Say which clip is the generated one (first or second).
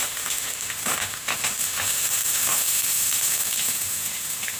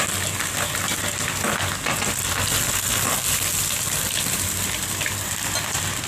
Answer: first